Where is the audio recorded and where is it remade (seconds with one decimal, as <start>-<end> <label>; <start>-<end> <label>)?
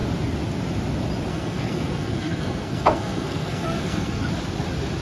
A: 0.0-1.3 recorded; 1.3-4.3 remade; 4.3-5.0 recorded